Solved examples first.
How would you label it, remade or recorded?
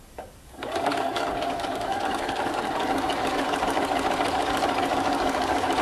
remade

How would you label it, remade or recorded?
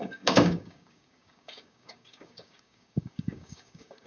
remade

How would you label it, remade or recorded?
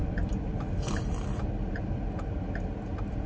recorded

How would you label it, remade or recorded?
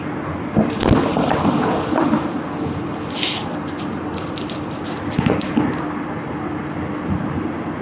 recorded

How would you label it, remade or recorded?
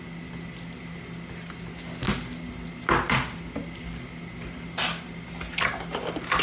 recorded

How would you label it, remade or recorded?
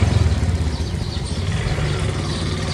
recorded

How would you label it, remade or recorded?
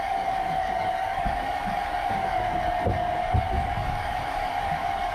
remade